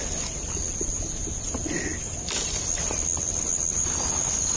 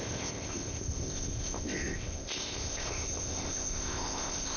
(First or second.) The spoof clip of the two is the second